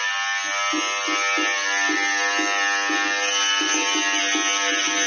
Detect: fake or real real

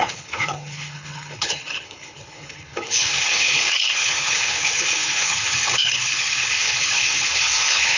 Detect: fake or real fake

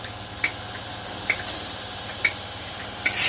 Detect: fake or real real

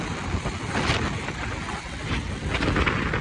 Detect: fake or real real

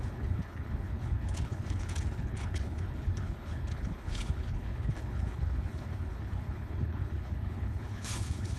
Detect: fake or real fake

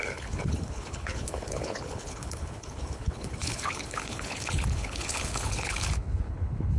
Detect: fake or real fake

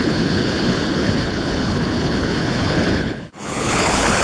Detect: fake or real fake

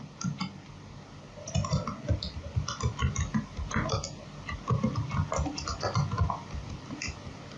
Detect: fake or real real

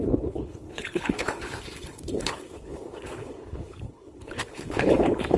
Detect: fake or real fake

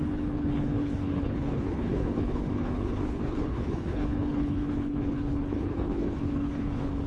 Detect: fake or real fake